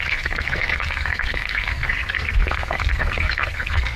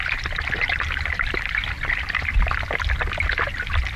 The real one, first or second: second